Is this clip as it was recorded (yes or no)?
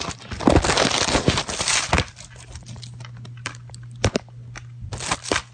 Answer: yes